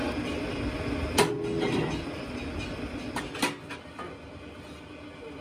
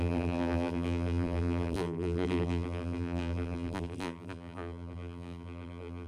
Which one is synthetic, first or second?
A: second